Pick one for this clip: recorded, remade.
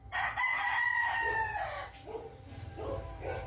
recorded